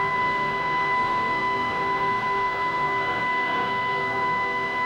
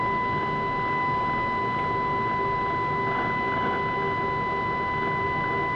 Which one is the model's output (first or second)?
first